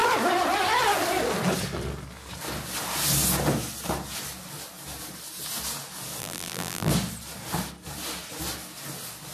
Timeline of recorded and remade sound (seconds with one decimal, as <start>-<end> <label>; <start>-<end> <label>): 0.0-6.2 recorded; 6.2-6.9 remade; 6.9-9.3 recorded